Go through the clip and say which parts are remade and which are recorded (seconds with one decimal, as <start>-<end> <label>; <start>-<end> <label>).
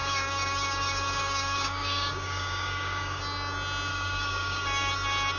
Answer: 0.0-3.2 remade; 3.2-3.9 recorded; 3.9-4.9 remade; 4.9-5.4 recorded